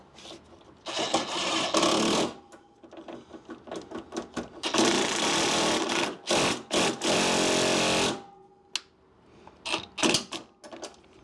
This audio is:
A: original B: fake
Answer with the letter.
A